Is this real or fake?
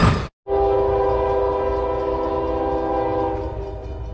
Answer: real